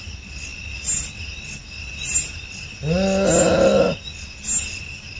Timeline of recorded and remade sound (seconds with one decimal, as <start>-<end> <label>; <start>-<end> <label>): 0.0-5.2 recorded